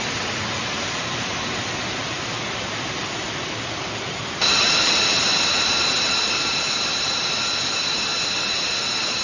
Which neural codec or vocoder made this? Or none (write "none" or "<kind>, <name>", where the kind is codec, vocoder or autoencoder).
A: none